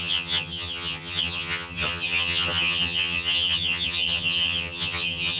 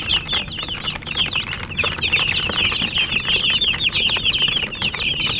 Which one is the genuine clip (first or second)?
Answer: second